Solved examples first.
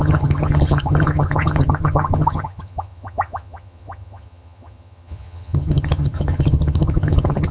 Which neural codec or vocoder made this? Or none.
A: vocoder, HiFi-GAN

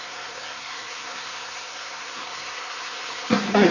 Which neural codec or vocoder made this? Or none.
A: codec, SNAC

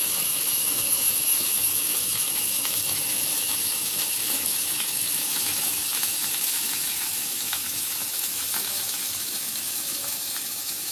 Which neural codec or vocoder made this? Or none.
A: autoencoder, DAC-VAE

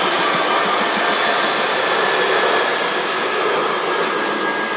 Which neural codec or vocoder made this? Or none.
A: none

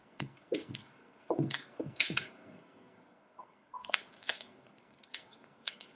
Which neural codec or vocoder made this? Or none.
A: codec, SNAC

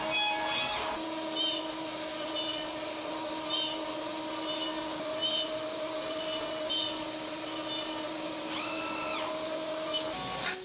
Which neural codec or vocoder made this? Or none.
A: none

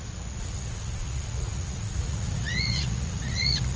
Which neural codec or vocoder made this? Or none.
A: vocoder, Vocos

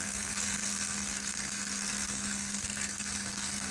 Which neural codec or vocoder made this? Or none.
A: codec, SNAC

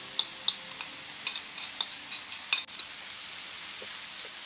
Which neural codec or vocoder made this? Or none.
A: none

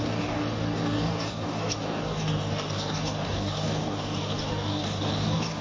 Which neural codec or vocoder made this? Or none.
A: codec, DAC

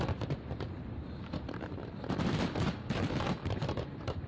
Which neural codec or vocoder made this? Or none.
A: vocoder, BigVGAN v2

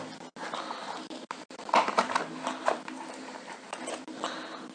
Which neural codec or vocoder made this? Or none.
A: none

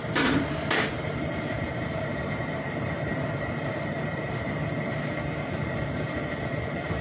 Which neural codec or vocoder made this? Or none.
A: vocoder, BigVGAN v2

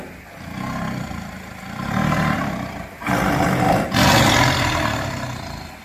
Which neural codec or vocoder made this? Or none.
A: none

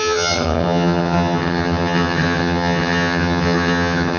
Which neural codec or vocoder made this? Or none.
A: vocoder, HiFi-GAN